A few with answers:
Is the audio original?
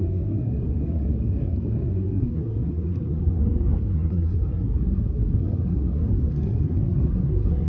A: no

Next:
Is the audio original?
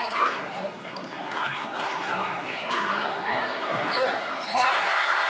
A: no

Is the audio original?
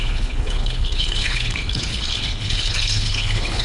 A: no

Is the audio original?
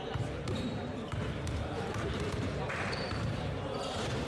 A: no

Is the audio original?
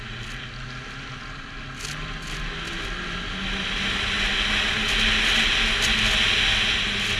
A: yes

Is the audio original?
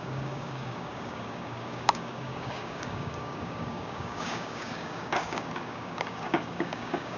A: no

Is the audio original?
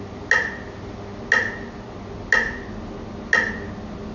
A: yes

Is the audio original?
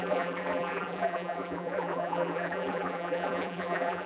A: no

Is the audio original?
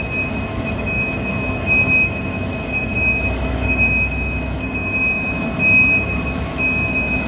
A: no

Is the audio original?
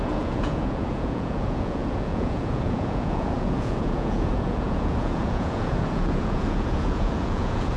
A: no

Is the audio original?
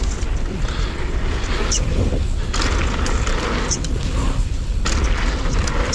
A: yes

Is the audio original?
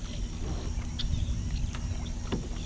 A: yes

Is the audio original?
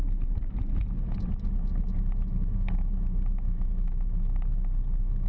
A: yes